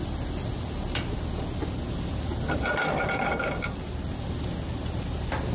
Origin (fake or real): real